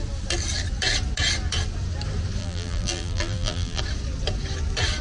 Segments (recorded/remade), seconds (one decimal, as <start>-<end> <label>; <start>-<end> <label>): 0.0-2.4 recorded; 2.4-3.8 remade; 3.8-5.0 recorded